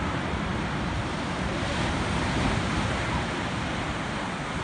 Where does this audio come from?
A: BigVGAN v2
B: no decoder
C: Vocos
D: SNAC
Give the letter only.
B